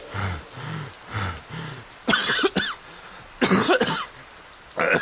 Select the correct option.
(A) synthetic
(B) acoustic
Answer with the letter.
B